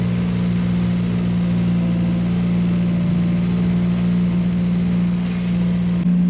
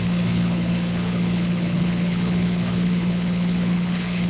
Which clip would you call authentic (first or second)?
first